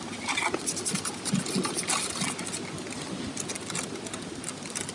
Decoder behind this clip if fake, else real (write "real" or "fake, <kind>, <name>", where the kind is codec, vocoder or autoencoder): real